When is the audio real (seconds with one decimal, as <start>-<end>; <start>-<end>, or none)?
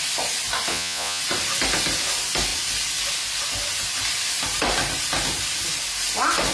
0.0-0.7; 1.2-6.5